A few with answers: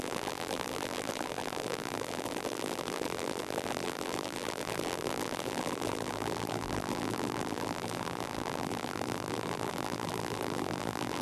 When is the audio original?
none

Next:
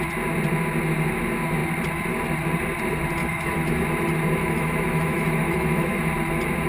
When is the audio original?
0.0-3.2; 3.8-4.4; 6.0-6.7

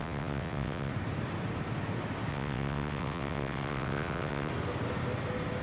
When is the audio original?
0.9-2.3; 4.5-5.6

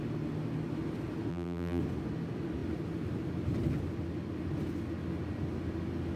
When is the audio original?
0.0-1.3; 1.8-6.2

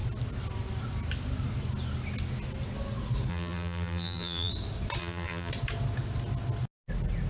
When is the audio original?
0.0-3.3; 4.5-5.0; 5.5-7.3